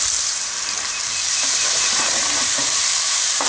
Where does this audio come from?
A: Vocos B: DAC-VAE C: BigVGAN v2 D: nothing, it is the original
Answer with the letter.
C